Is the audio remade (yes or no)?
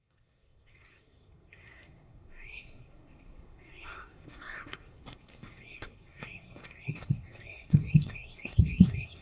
yes